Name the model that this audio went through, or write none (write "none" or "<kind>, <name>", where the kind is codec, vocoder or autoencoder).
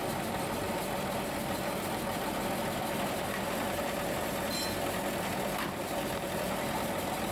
none